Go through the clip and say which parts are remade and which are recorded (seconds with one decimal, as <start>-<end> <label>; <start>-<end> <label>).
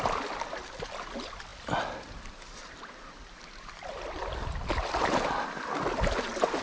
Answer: 0.0-6.6 recorded